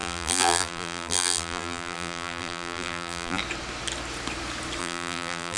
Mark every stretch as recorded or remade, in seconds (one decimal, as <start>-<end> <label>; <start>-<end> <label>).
0.0-3.4 remade; 3.4-4.8 recorded; 4.8-5.6 remade